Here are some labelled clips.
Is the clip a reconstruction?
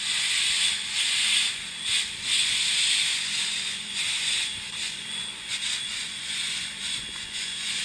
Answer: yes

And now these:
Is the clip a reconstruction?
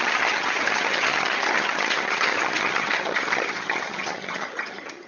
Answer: yes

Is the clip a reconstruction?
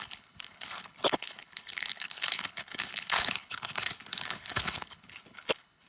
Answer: yes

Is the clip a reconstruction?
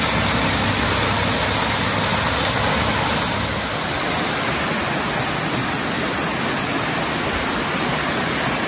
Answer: no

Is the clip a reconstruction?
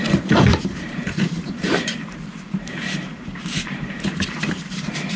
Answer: yes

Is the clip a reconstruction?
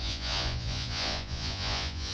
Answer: yes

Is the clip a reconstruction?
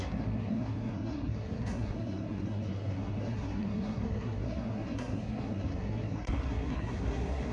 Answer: yes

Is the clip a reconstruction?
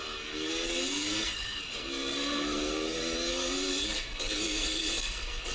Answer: yes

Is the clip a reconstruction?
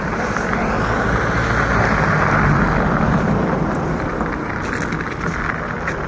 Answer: no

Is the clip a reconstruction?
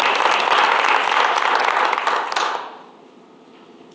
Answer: no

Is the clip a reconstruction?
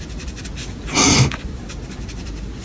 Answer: no